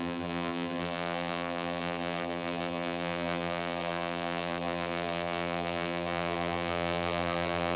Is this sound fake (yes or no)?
yes